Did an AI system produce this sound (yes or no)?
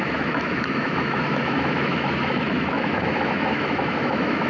yes